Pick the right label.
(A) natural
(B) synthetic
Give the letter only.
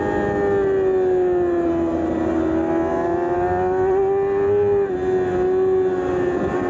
A